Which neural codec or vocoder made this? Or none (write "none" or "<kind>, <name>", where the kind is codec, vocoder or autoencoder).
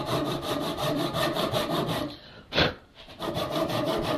vocoder, BigVGAN v2